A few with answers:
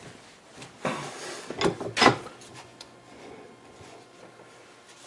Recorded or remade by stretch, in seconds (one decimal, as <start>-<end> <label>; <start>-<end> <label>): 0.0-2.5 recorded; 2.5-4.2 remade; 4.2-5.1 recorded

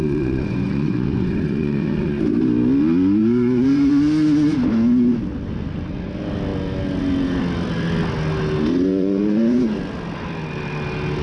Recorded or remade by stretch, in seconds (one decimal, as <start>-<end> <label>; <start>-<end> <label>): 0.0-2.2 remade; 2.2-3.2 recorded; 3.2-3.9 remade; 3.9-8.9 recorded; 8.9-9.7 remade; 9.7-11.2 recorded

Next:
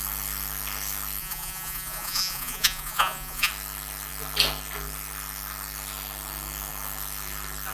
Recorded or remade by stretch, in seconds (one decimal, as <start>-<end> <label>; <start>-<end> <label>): 0.0-1.2 recorded; 1.2-3.5 remade; 3.5-7.7 recorded